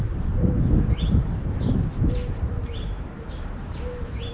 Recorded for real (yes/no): no